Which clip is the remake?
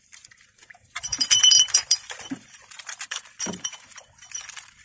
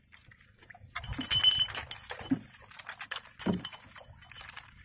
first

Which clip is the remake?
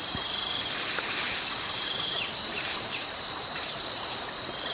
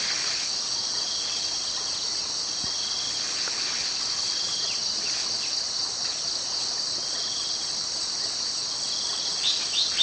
first